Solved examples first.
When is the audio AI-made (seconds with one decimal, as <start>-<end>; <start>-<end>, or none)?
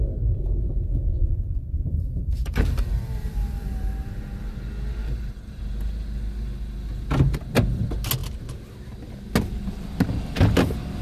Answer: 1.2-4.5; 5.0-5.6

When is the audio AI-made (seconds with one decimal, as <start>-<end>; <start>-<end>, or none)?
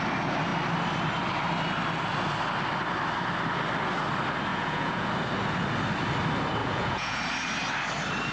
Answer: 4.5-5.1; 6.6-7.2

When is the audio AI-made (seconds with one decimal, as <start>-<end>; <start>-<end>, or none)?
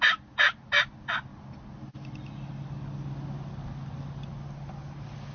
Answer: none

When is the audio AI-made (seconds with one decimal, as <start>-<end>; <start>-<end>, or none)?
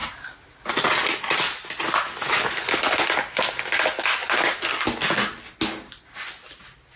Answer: none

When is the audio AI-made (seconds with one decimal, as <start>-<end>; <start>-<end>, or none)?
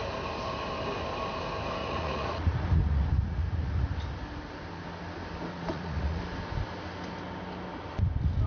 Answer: 1.8-3.9; 5.5-6.2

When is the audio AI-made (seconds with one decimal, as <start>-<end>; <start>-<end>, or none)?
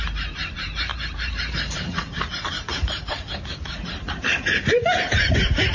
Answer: 0.0-5.7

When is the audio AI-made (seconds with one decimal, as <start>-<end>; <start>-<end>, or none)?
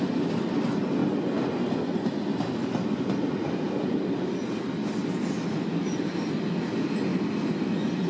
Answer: none